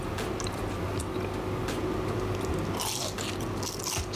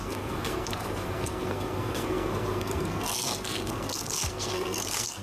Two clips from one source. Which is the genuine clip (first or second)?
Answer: first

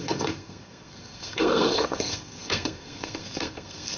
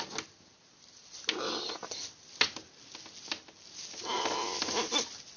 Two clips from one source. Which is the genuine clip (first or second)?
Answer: second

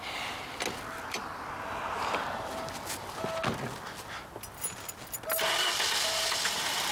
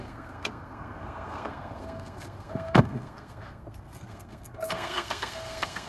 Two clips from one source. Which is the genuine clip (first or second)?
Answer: first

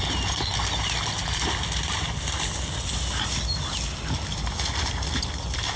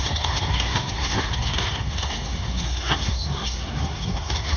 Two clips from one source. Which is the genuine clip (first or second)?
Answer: first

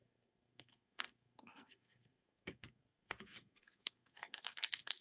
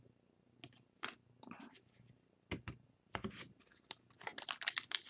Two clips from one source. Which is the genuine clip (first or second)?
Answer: second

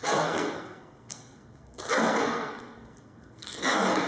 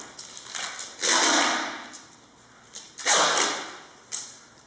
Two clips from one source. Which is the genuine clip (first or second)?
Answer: second